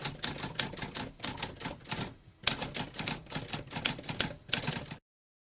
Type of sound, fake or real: real